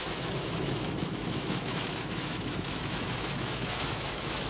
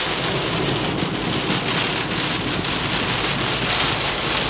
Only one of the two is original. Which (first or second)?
second